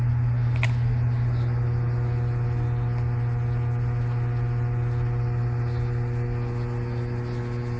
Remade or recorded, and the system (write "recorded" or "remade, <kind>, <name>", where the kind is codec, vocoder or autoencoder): recorded